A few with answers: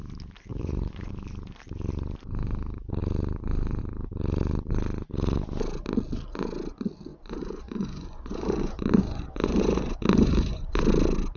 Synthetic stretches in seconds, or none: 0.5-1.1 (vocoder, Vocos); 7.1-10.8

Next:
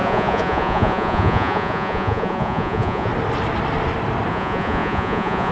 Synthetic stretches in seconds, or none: 0.0-3.1 (vocoder, Vocos); 4.3-5.5

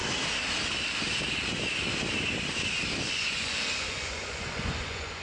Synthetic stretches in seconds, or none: 3.1-5.2 (vocoder, Vocos)

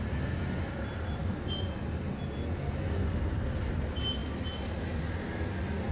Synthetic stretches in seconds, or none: none

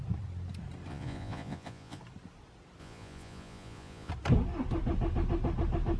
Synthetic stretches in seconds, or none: 0.9-2.0 (vocoder, Vocos); 2.8-4.1